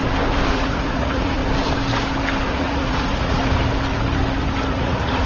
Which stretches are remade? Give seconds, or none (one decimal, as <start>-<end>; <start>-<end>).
0.5-1.4; 2.5-3.4; 4.7-5.3